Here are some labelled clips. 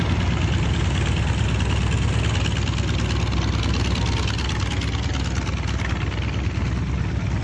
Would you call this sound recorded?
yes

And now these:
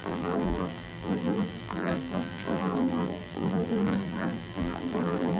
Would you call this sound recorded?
no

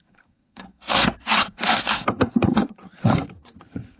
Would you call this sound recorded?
no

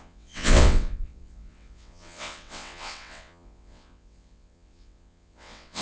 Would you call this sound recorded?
no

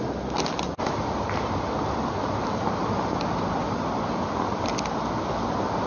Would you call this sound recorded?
yes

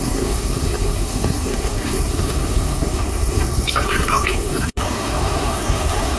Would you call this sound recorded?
no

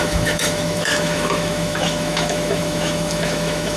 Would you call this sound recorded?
no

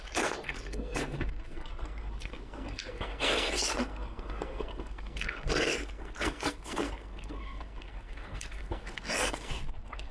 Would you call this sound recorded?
no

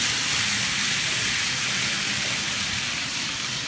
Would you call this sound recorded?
yes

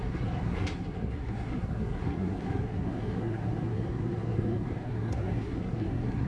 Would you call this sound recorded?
no